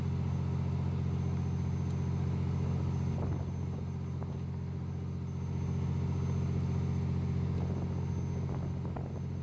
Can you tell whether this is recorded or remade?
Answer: recorded